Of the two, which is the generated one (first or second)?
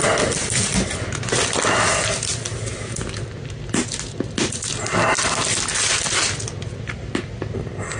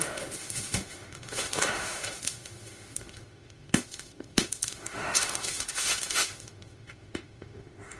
second